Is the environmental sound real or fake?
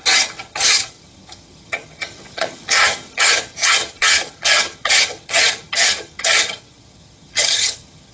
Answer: fake